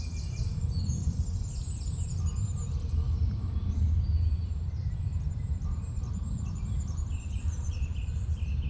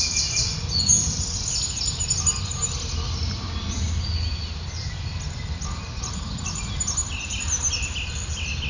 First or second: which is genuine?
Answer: second